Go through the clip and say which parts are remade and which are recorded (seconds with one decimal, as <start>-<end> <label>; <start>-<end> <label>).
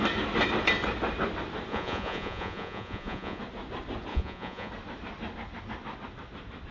0.0-1.7 recorded; 1.7-3.4 remade; 3.4-4.1 recorded; 4.1-4.7 remade; 4.7-6.7 recorded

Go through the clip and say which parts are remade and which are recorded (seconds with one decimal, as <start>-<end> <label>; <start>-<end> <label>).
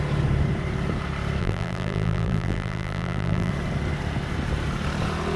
0.0-1.4 recorded; 1.4-3.5 remade; 3.5-5.4 recorded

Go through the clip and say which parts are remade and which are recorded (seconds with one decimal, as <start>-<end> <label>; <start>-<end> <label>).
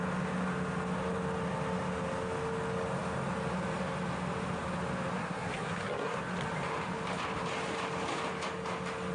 0.0-5.1 recorded; 5.1-6.2 remade; 6.2-9.1 recorded